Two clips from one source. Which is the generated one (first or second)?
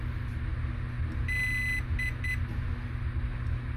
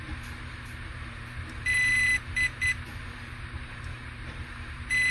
second